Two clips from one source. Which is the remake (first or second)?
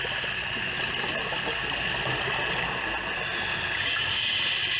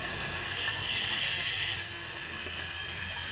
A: second